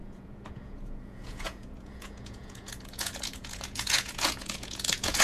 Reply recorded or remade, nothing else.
remade